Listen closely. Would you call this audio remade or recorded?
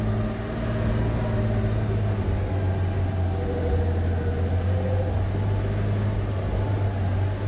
recorded